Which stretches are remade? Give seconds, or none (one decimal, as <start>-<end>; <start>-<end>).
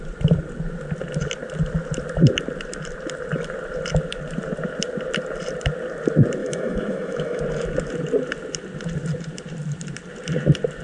6.4-7.4